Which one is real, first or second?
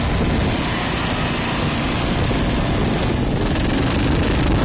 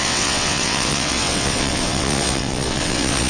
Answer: first